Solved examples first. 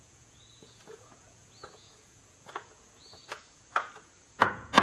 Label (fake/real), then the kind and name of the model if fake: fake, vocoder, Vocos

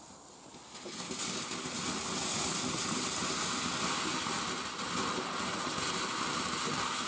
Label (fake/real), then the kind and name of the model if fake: real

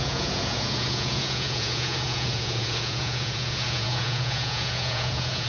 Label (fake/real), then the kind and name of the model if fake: fake, vocoder, Vocos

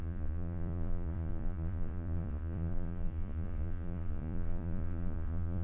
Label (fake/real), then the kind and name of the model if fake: fake, vocoder, Vocos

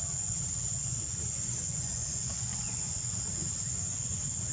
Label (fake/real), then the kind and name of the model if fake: fake, vocoder, Vocos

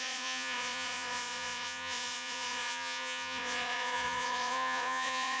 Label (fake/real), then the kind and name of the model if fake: fake, vocoder, Vocos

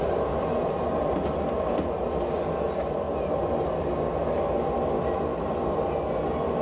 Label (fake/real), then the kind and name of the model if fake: real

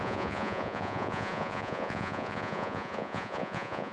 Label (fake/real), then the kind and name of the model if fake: fake, vocoder, Vocos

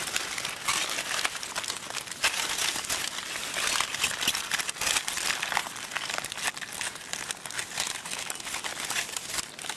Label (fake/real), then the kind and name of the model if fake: real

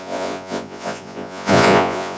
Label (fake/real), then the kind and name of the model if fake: fake, vocoder, Vocos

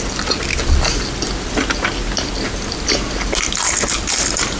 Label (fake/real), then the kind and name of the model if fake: real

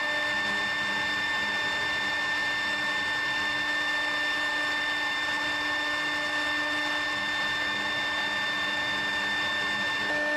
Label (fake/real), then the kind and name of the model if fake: real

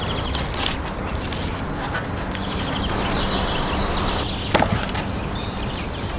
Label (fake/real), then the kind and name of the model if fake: real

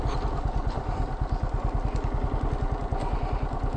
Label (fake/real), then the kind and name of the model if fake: real